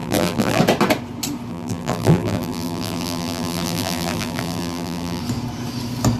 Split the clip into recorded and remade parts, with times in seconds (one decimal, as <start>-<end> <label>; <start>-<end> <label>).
0.0-0.6 remade; 0.6-1.5 recorded; 1.5-5.2 remade; 5.2-6.2 recorded